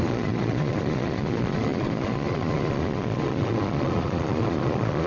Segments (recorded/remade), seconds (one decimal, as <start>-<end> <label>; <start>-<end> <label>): 0.0-5.1 remade

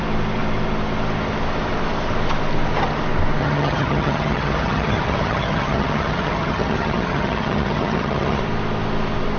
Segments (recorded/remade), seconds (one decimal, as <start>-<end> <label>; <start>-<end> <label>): 0.0-3.4 recorded; 3.4-8.4 remade; 8.4-9.4 recorded